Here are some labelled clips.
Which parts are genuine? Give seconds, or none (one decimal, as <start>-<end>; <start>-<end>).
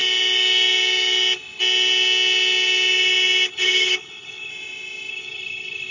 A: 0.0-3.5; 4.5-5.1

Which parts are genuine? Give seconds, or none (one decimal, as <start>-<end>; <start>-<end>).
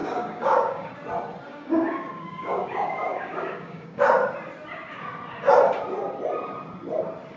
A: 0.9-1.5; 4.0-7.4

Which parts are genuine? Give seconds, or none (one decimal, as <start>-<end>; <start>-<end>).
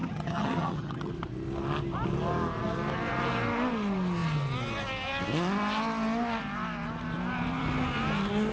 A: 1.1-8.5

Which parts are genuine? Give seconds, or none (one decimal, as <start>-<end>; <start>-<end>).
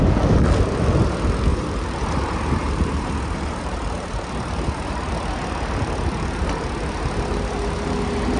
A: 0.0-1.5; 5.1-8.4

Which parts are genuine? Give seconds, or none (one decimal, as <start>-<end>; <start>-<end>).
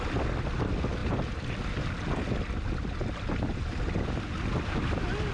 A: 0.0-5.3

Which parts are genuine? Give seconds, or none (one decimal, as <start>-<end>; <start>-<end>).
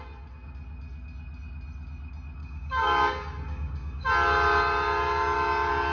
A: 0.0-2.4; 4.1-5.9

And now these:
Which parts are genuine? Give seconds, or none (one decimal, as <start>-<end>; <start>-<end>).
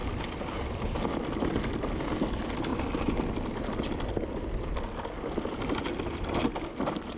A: 0.0-7.2